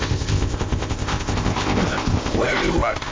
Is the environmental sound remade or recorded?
remade